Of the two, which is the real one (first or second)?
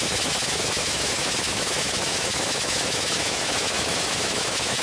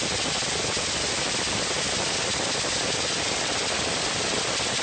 second